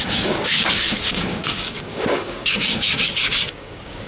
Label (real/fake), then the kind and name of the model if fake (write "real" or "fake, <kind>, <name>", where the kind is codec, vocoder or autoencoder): fake, codec, DAC